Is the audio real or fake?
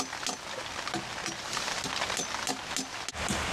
real